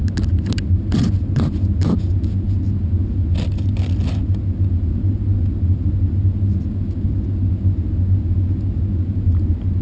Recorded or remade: recorded